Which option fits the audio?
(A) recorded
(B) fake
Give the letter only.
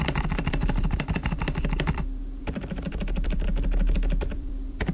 B